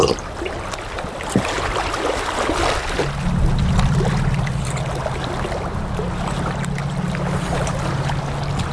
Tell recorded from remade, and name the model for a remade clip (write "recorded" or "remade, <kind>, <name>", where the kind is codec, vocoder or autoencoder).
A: recorded